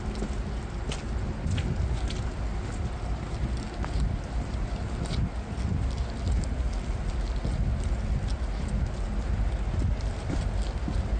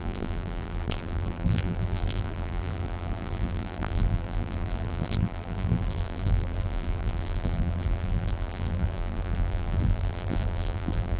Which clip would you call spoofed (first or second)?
second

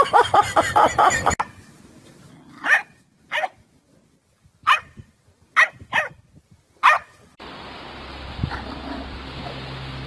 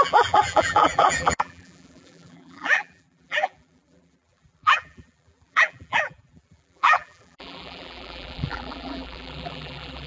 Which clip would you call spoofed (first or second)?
second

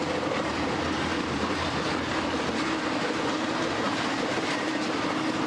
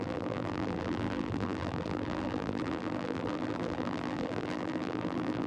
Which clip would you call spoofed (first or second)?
second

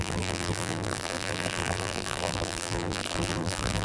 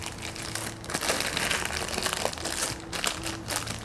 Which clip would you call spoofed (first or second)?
first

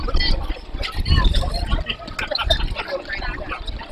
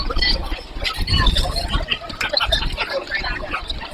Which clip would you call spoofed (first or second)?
second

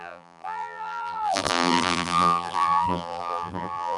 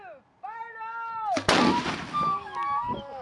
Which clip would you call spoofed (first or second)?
first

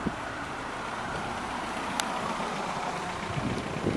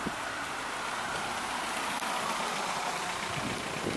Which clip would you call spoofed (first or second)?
first